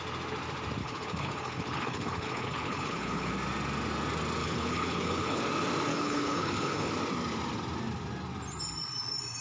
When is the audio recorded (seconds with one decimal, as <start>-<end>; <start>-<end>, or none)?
0.0-0.8; 3.3-4.4; 5.4-5.9; 6.9-9.4